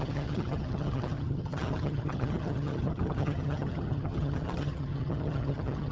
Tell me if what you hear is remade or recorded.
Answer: remade